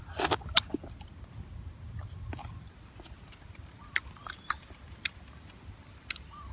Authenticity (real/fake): real